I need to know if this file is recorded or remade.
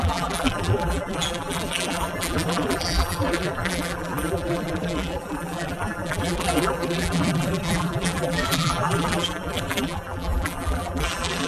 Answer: remade